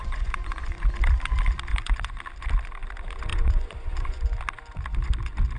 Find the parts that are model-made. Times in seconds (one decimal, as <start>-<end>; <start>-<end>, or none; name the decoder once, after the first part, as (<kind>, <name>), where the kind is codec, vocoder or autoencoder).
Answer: 0.0-0.8 (vocoder, Vocos); 1.7-2.2; 3.3-4.2